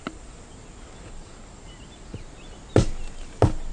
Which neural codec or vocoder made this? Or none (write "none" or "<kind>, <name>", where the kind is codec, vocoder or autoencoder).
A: none